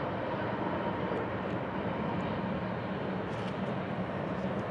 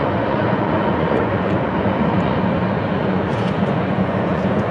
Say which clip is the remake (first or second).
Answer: second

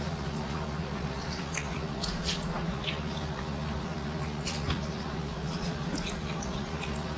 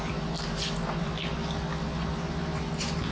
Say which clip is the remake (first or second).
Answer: first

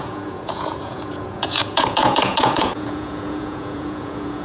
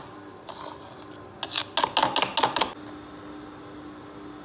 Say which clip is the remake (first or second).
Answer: first